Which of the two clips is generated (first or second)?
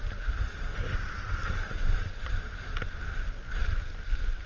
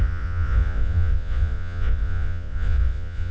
second